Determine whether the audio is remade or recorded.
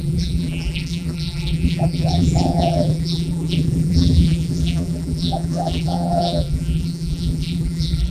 remade